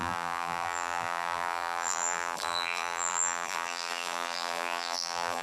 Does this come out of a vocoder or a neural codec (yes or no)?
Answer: yes